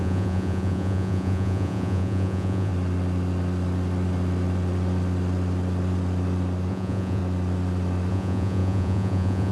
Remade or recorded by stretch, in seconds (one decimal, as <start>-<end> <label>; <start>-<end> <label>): 0.0-2.7 remade; 2.7-6.7 recorded; 6.7-7.2 remade; 7.2-8.1 recorded; 8.1-9.5 remade